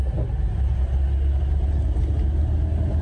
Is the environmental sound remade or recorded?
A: recorded